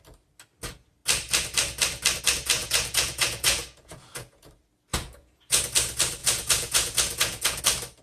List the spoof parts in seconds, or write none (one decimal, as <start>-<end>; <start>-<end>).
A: 2.6-4.5; 4.9-5.6; 6.2-7.6